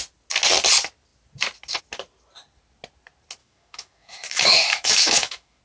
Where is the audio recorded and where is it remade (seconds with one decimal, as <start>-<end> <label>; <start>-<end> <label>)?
0.0-3.4 recorded; 3.4-5.6 remade